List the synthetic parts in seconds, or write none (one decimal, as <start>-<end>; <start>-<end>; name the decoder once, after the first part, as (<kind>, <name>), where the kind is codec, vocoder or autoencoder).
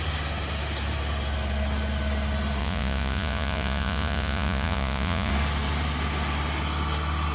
2.6-5.3 (vocoder, Vocos)